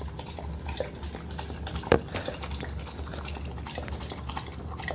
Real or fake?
real